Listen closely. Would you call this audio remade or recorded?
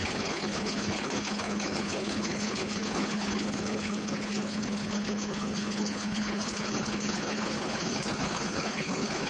remade